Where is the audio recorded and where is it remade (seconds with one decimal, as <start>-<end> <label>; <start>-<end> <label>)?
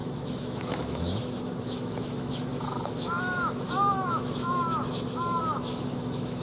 0.0-6.4 remade